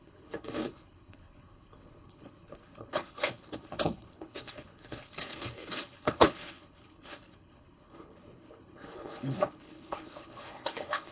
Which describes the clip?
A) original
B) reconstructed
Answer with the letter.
B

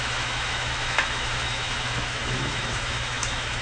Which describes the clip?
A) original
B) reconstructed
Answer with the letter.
B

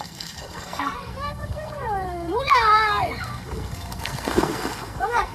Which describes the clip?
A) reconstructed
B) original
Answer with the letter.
A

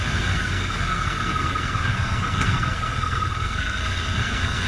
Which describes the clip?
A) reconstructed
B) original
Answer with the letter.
A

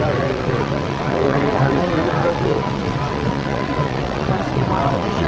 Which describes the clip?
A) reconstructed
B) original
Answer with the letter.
A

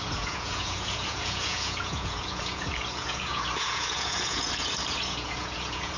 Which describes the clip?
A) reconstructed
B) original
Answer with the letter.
A